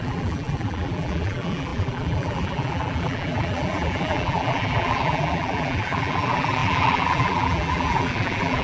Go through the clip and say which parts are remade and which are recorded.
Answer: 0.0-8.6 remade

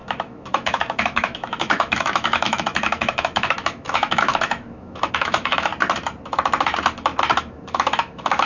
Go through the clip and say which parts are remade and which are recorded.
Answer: 0.0-5.7 remade; 5.7-7.4 recorded; 7.4-8.5 remade

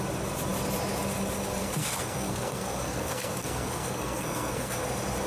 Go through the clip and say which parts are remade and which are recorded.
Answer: 0.0-1.6 recorded; 1.6-4.8 remade; 4.8-5.3 recorded

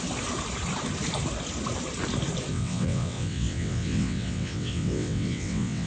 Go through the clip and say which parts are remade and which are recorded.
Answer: 0.0-2.5 recorded; 2.5-5.9 remade

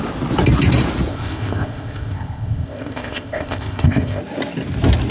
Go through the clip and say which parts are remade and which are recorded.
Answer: 0.0-1.1 recorded; 1.1-4.2 remade; 4.2-5.1 recorded

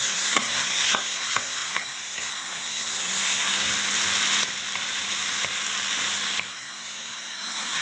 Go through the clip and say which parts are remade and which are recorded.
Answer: 0.0-3.7 remade; 3.7-6.5 recorded; 6.5-7.8 remade